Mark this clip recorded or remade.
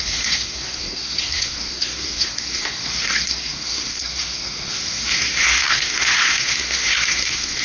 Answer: remade